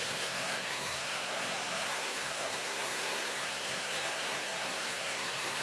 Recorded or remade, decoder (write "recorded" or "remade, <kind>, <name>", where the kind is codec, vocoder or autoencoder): remade, codec, SNAC